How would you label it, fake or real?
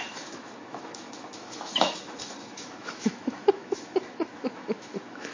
fake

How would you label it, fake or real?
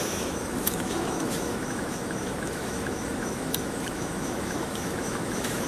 fake